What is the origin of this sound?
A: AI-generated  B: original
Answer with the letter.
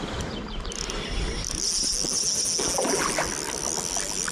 B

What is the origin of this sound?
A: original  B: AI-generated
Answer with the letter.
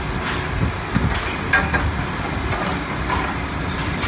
A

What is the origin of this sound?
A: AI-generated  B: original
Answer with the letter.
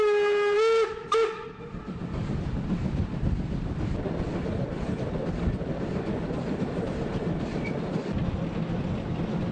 B